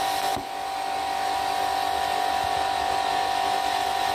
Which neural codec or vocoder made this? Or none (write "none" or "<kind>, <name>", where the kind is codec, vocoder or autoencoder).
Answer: none